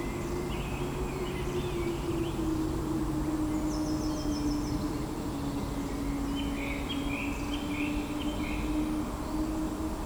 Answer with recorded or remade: recorded